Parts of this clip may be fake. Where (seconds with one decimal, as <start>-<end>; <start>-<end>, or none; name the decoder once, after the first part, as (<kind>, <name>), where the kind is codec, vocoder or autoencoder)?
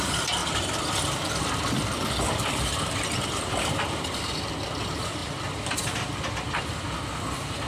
0.4-4.2 (vocoder, BigVGAN v2); 5.2-6.0